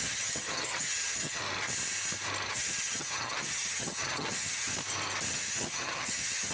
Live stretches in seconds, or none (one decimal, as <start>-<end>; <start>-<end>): 1.4-2.5; 4.7-5.3